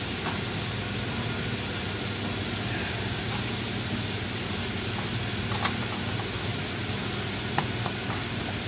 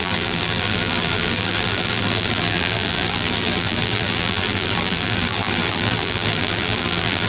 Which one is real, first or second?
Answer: first